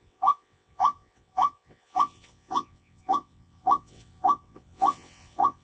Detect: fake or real fake